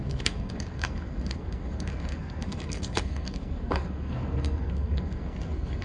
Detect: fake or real fake